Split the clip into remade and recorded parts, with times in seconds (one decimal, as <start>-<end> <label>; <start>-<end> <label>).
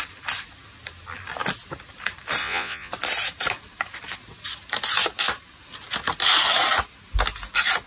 0.0-2.4 recorded; 2.4-2.9 remade; 2.9-7.9 recorded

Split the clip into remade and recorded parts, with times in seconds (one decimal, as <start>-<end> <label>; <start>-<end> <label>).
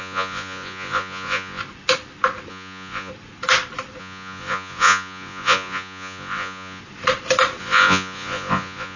0.0-1.6 remade; 1.6-2.5 recorded; 2.5-3.1 remade; 3.1-4.0 recorded; 4.0-6.8 remade; 6.8-7.6 recorded; 7.6-9.0 remade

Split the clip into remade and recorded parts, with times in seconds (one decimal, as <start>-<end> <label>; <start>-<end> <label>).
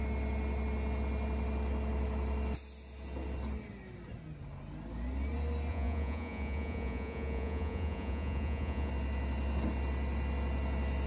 0.0-5.7 recorded; 5.7-8.9 remade; 8.9-11.1 recorded